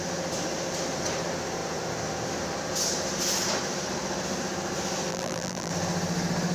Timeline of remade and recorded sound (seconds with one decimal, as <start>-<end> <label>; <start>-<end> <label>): 0.0-5.1 recorded; 5.1-5.7 remade; 5.7-6.5 recorded